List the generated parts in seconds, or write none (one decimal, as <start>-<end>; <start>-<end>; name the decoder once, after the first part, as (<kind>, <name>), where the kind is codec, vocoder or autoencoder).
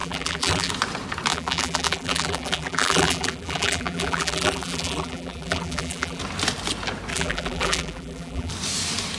0.0-0.7 (vocoder, BigVGAN v2); 1.3-6.2; 7.1-8.5